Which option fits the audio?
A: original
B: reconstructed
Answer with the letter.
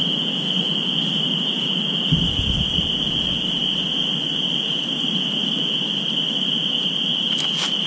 A